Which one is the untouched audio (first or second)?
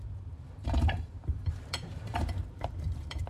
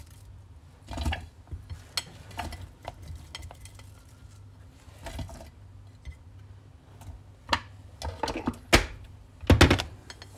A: second